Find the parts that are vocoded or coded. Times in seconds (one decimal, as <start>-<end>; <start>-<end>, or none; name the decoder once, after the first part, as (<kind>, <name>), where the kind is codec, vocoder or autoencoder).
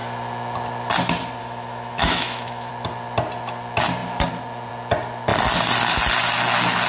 1.4-2.7 (autoencoder, DAC-VAE)